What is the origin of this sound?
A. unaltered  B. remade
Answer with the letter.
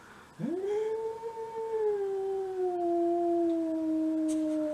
A